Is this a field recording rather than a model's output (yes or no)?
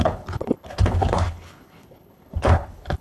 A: no